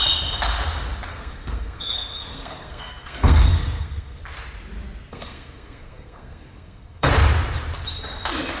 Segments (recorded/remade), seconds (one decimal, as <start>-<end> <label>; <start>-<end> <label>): 0.0-1.1 recorded; 1.1-4.2 remade; 4.2-5.1 recorded; 5.1-7.1 remade; 7.1-8.6 recorded